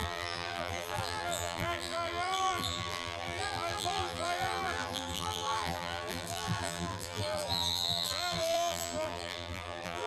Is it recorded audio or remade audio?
remade